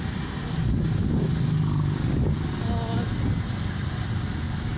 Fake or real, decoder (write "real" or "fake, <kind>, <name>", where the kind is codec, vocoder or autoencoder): real